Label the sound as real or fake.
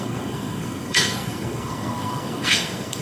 fake